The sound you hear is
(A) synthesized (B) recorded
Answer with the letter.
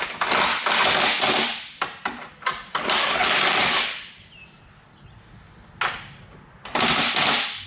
B